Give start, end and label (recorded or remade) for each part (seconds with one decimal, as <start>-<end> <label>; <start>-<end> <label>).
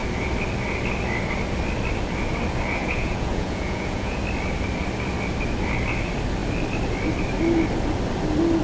0.0-2.8 recorded; 2.8-4.2 remade; 4.2-8.6 recorded